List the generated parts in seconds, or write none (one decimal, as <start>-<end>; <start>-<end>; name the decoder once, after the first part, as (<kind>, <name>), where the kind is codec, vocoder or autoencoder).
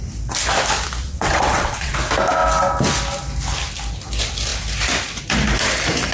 1.0-1.9 (vocoder, WaveNeXt)